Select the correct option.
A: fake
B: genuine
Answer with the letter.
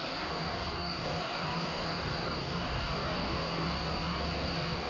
A